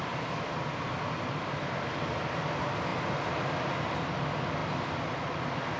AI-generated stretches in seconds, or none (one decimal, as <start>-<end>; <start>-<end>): none